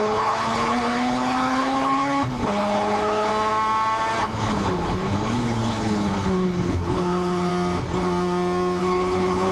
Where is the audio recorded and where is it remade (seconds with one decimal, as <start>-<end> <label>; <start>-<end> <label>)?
0.0-3.3 remade; 3.3-4.2 recorded; 4.2-7.5 remade; 7.5-8.8 recorded; 8.8-9.5 remade